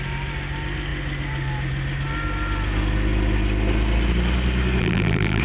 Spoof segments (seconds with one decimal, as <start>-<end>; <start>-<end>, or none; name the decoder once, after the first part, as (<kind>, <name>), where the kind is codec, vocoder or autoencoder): 4.8-5.4 (vocoder, BigVGAN v2)